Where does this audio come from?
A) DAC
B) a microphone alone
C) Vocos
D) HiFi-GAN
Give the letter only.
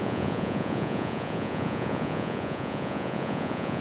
C